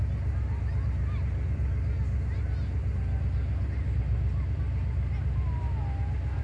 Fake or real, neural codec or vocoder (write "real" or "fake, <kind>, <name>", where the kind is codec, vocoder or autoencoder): real